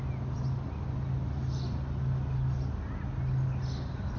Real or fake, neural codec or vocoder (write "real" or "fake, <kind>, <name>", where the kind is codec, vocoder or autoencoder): real